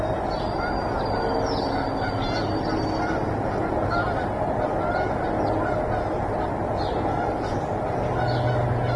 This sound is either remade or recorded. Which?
recorded